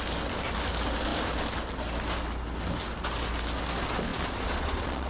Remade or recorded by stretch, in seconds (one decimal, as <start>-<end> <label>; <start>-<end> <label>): 0.0-4.1 recorded; 4.1-5.1 remade